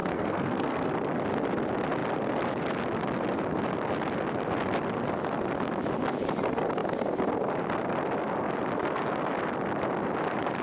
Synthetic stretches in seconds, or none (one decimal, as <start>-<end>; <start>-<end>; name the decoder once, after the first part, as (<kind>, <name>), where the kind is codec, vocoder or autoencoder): 0.0-0.9 (codec, SNAC)

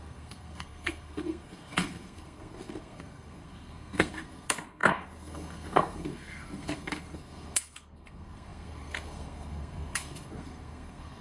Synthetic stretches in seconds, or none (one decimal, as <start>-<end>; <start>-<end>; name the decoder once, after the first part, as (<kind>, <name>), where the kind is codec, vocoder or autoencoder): 0.0-11.2 (codec, SNAC)

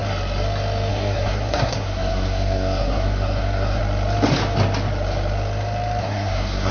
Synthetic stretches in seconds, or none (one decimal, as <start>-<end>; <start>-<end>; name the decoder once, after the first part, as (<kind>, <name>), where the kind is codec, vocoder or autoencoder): 0.9-3.8 (codec, SNAC); 6.0-6.7

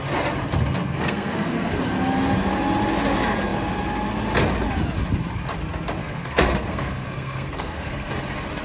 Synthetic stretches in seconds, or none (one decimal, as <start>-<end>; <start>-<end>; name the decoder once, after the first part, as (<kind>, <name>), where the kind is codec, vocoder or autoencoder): 0.8-1.8 (codec, SNAC); 6.0-8.1

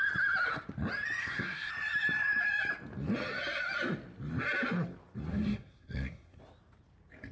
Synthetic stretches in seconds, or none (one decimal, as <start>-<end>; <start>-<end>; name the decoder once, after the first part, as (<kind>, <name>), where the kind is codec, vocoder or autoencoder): 1.2-1.7 (codec, SNAC); 5.3-6.4